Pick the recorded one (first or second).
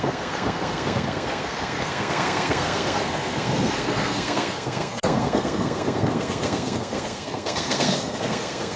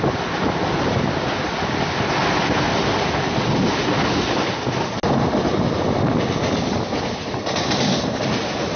second